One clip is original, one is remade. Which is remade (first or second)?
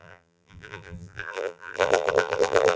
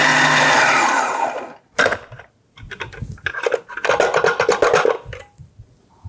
first